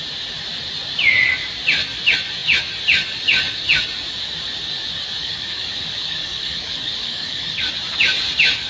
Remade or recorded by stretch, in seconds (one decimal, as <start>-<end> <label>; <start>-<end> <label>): 0.0-5.2 recorded; 5.2-7.6 remade; 7.6-8.7 recorded